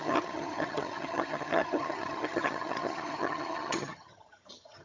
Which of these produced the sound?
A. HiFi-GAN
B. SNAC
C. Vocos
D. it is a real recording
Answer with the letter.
A